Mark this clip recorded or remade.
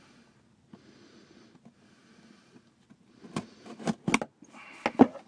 recorded